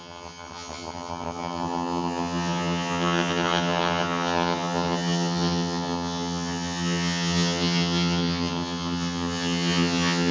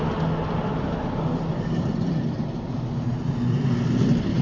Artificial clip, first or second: first